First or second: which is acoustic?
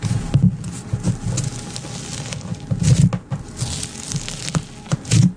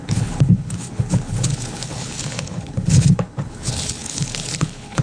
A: first